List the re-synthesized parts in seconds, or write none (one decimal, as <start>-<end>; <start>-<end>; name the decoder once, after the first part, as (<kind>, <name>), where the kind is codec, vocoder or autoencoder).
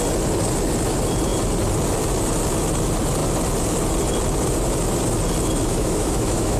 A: 5.7-6.6 (autoencoder, DAC-VAE)